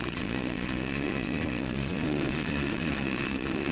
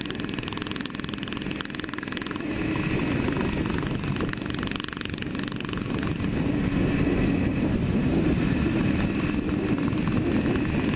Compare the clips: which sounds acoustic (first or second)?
second